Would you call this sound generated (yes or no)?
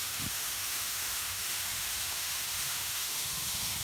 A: yes